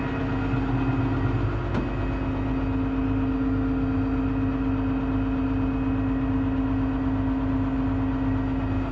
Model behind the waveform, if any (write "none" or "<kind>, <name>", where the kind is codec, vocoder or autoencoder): none